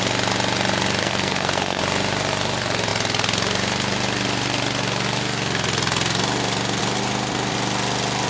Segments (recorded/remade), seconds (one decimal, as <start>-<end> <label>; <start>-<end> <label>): 0.0-1.0 recorded; 1.0-1.8 remade; 1.8-8.3 recorded